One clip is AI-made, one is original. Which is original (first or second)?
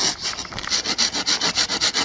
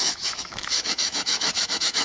first